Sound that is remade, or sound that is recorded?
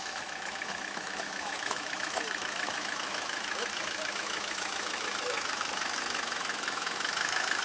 remade